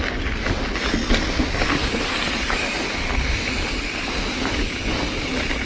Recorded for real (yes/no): yes